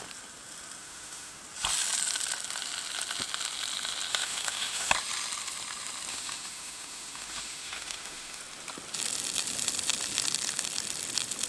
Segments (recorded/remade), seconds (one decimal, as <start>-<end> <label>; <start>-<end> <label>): 0.0-0.8 recorded; 0.8-1.4 remade; 1.4-4.1 recorded; 4.1-4.9 remade; 4.9-6.1 recorded; 6.1-8.4 remade; 8.4-11.5 recorded